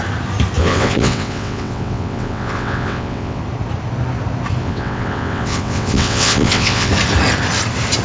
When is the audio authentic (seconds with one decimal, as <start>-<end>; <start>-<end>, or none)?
0.0-0.6; 3.4-4.6; 6.9-8.0